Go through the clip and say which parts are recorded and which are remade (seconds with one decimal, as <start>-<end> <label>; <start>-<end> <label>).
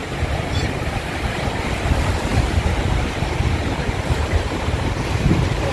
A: 0.0-1.2 remade; 1.2-2.3 recorded; 2.3-5.7 remade